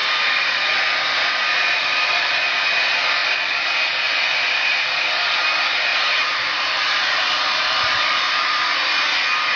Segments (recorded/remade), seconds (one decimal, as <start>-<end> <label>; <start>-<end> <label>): 0.0-0.6 remade; 0.6-5.9 recorded; 5.9-8.8 remade; 8.8-9.6 recorded

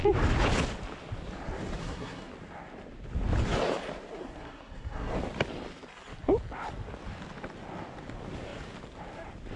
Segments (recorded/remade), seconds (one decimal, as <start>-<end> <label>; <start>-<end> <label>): 0.0-1.8 recorded; 1.8-2.3 remade; 2.3-4.2 recorded; 4.2-5.1 remade; 5.1-9.6 recorded

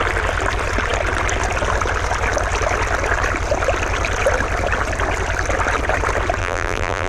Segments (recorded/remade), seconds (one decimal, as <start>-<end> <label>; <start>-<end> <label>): 0.0-6.4 recorded; 6.4-7.1 remade

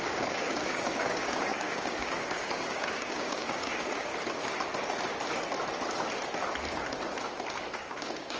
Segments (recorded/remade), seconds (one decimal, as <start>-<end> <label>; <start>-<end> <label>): 0.0-4.1 remade; 4.1-7.7 recorded; 7.7-8.4 remade

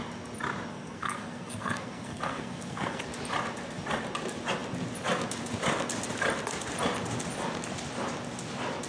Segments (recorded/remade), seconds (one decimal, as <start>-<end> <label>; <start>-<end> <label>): 0.0-0.7 recorded; 0.7-3.0 remade; 3.0-8.9 recorded

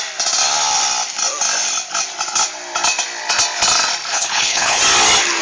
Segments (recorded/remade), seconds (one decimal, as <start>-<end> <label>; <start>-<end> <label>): 0.0-4.1 recorded; 4.1-4.8 remade; 4.8-5.4 recorded

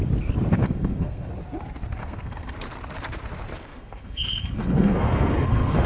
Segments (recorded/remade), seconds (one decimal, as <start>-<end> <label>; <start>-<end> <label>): 0.0-0.6 recorded; 0.6-1.3 remade; 1.3-2.0 recorded; 2.0-2.5 remade; 2.5-3.7 recorded; 3.7-5.9 remade